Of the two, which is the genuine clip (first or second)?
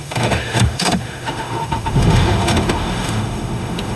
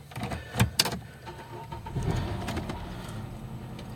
second